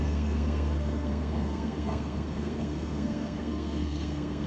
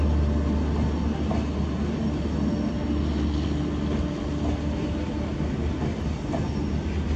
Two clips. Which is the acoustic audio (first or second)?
second